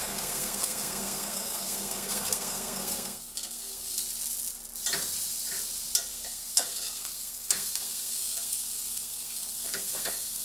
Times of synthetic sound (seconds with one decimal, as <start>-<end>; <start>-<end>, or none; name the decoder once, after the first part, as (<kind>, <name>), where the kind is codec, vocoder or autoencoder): 0.0-4.0 (codec, SNAC); 6.1-10.4